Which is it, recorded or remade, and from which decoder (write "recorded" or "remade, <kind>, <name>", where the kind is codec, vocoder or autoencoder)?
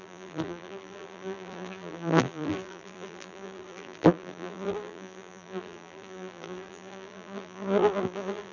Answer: remade, vocoder, BigVGAN v2